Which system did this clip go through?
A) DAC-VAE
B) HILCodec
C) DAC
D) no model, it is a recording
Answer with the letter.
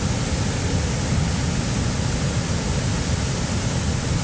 D